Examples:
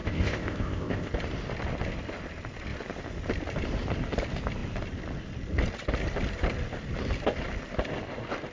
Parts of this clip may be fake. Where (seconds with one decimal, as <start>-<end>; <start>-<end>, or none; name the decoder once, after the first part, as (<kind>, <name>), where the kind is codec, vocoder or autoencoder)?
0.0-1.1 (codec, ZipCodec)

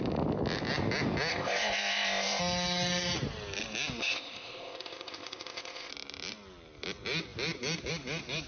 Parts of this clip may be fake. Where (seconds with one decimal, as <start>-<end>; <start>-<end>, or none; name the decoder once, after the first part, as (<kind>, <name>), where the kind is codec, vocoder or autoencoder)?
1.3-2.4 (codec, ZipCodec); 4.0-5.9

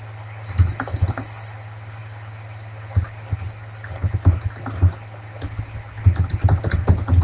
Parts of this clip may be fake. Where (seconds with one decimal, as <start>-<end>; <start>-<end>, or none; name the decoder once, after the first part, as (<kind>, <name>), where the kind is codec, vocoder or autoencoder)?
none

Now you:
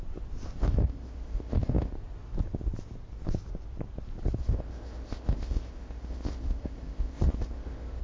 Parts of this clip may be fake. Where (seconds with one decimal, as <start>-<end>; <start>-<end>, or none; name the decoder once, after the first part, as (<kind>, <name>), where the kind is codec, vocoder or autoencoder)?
0.6-1.9 (codec, ZipCodec); 4.4-8.0